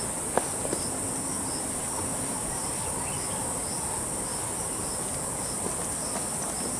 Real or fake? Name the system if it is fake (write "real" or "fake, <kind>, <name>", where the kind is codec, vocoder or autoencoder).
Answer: real